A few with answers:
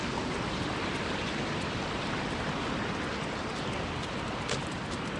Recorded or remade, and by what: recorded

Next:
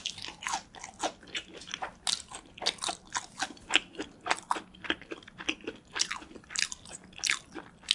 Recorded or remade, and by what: recorded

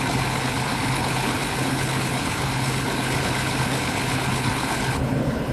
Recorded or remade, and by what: remade, codec, HILCodec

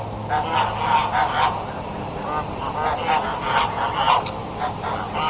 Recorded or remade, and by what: recorded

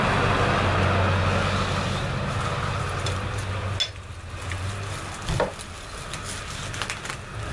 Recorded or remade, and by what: recorded